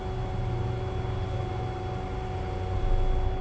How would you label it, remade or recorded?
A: recorded